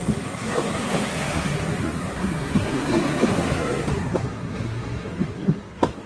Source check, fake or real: fake